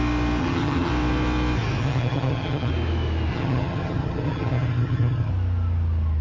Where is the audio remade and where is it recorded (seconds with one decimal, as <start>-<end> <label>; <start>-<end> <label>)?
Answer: 0.0-0.4 recorded; 0.4-0.9 remade; 0.9-1.8 recorded; 1.8-2.7 remade; 2.7-3.3 recorded; 3.3-5.3 remade; 5.3-6.2 recorded